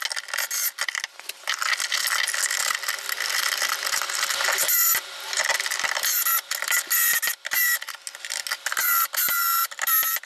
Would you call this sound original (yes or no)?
yes